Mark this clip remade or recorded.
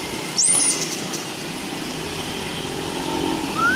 remade